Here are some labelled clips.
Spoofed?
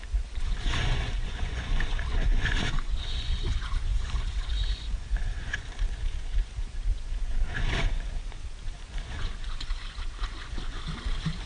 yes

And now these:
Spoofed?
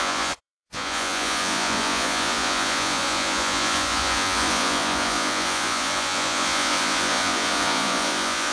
yes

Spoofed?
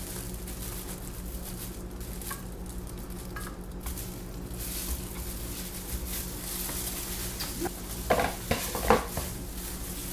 no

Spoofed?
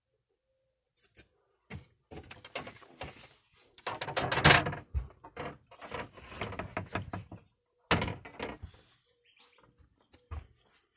no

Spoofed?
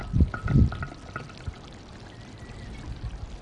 no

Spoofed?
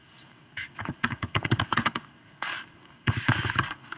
yes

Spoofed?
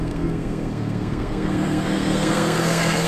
yes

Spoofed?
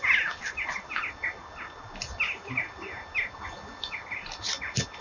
no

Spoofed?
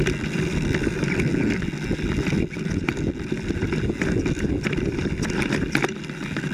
no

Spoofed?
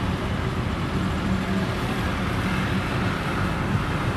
yes